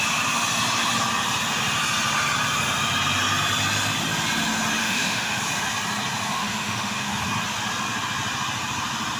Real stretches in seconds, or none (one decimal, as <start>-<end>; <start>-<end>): 0.0-4.8; 5.4-6.3; 7.1-9.2